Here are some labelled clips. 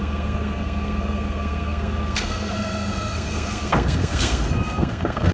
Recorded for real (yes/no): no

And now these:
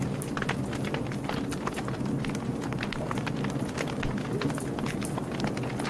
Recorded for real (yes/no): yes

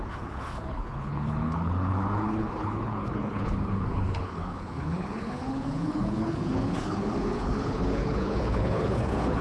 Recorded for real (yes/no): no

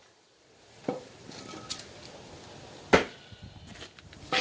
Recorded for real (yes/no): yes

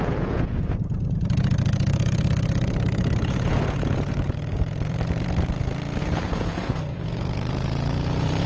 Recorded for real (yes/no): no